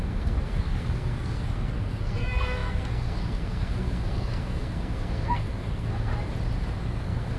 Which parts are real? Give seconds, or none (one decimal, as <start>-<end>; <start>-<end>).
6.1-6.8